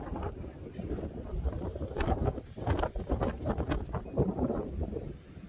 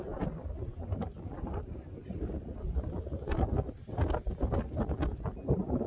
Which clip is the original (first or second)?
second